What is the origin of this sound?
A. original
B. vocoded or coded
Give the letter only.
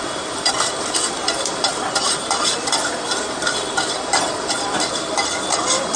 A